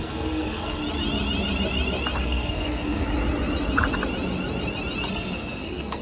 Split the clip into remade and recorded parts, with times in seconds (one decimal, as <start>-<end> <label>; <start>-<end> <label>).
0.0-0.8 remade; 0.8-2.2 recorded; 2.2-3.0 remade; 3.0-5.1 recorded; 5.1-6.0 remade

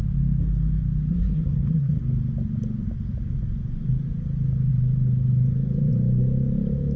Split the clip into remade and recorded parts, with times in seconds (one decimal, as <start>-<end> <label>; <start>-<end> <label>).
0.0-1.1 recorded; 1.1-2.0 remade; 2.0-7.0 recorded

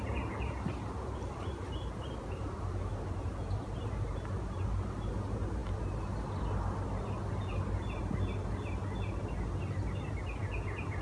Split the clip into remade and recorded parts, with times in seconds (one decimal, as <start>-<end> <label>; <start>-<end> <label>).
0.0-11.0 recorded

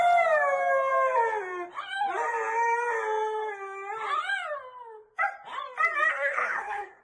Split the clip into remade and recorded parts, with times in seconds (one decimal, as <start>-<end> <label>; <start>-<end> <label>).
0.0-6.1 recorded; 6.1-7.0 remade

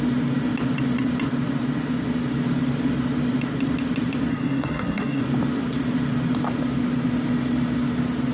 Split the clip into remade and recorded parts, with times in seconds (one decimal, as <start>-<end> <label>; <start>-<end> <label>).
0.0-4.3 recorded; 4.3-5.2 remade; 5.2-8.3 recorded

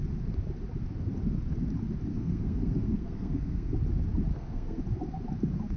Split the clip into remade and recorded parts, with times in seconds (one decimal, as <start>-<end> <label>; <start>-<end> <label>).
0.0-2.1 recorded; 2.1-3.7 remade; 3.7-4.3 recorded; 4.3-4.8 remade; 4.8-5.8 recorded

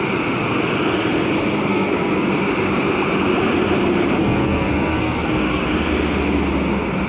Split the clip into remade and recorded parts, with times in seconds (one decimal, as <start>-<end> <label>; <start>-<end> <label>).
0.0-1.7 recorded; 1.7-2.3 remade; 2.3-4.2 recorded; 4.2-5.6 remade; 5.6-7.1 recorded